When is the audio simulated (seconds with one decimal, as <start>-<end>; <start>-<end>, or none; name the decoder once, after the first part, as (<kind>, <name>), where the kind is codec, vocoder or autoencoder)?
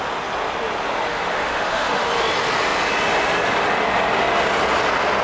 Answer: 1.1-2.1 (autoencoder, DAC-VAE)